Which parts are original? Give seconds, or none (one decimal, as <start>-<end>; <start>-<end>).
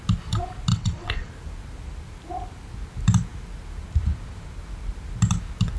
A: 0.0-0.7; 1.3-5.8